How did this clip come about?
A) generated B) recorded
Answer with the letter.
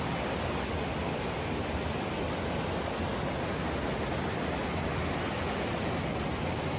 B